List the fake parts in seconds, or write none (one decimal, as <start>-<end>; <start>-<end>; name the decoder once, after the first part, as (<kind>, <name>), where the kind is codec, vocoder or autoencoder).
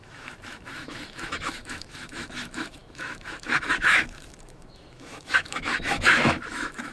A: 0.0-6.9 (autoencoder, DAC-VAE)